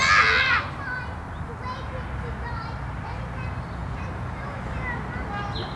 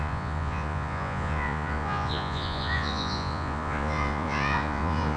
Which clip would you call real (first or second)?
first